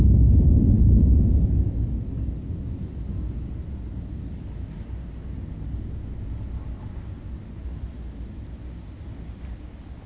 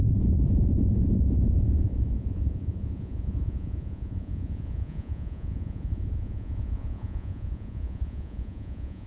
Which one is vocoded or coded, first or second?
second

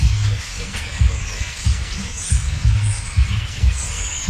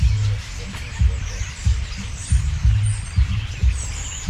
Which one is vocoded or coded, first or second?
first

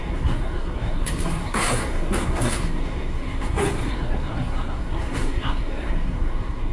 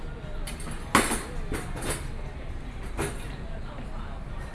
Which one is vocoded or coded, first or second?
first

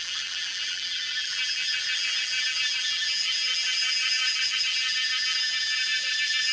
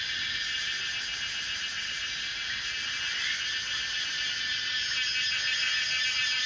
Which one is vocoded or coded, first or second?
first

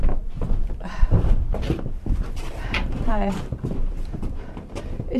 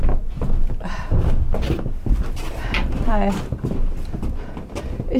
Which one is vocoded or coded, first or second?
first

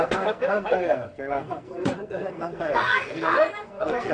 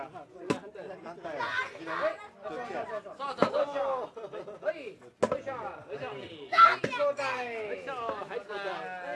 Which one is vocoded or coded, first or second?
first